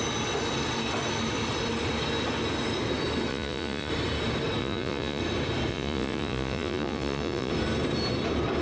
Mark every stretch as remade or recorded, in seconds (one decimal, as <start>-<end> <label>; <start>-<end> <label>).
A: 0.0-3.3 recorded; 3.3-3.9 remade; 3.9-4.6 recorded; 4.6-5.2 remade; 5.2-5.7 recorded; 5.7-7.5 remade; 7.5-8.6 recorded